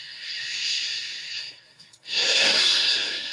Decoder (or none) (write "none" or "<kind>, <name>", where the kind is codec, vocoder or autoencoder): codec, SNAC